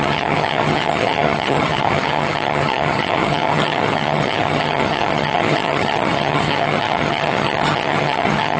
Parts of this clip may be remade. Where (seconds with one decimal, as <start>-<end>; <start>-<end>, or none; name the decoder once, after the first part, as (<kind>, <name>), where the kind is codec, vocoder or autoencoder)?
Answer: 0.0-8.6 (vocoder, HiFi-GAN)